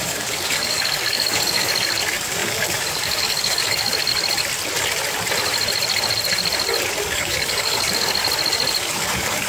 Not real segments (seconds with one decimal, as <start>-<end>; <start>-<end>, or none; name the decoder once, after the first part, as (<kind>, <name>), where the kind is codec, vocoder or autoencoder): 0.0-4.1 (codec, DAC); 7.0-8.2; 8.8-9.5